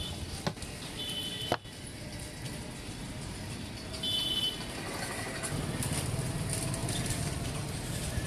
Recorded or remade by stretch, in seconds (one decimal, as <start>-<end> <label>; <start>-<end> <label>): 0.0-8.3 recorded